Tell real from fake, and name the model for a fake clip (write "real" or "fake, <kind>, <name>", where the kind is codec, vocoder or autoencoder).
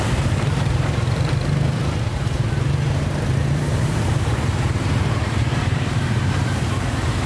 fake, vocoder, BigVGAN v2